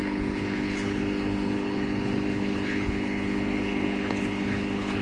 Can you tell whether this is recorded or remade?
remade